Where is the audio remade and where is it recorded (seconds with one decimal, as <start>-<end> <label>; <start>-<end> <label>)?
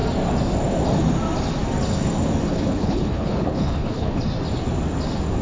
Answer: 0.0-2.5 recorded; 2.5-4.2 remade; 4.2-5.4 recorded